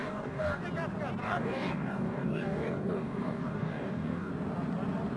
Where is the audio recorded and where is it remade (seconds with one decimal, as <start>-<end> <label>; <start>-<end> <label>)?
0.0-0.6 remade; 0.6-1.2 recorded; 1.2-4.3 remade; 4.3-5.2 recorded